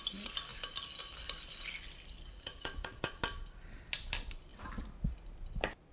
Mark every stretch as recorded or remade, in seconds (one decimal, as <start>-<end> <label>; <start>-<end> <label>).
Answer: 0.0-2.3 recorded; 2.3-3.2 remade; 3.2-5.9 recorded